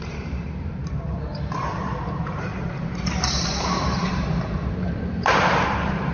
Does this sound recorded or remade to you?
remade